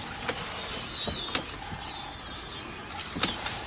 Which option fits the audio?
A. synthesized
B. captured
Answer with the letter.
B